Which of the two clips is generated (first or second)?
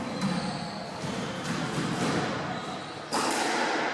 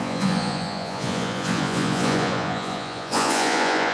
second